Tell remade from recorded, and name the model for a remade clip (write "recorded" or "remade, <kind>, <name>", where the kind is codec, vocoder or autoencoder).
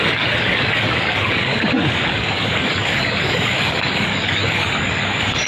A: remade, codec, DAC